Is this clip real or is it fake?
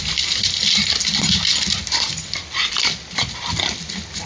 real